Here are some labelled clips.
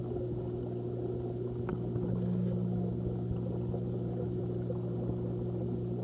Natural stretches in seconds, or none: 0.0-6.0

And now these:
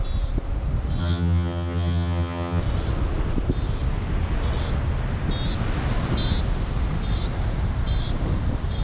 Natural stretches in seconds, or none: 0.0-1.0; 2.6-8.8

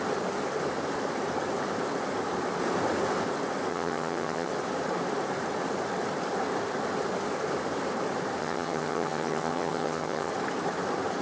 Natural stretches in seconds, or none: 0.0-3.7; 4.5-8.4; 10.3-11.2

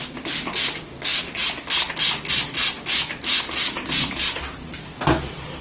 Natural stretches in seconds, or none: 0.0-5.6

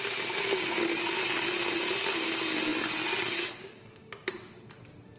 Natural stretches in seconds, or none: 0.0-5.2

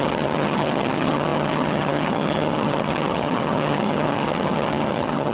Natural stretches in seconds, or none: none

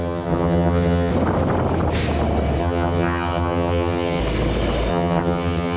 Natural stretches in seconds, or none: 1.1-2.6; 4.2-4.9